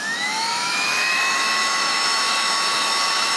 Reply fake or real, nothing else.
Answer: fake